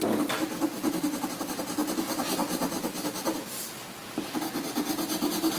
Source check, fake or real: real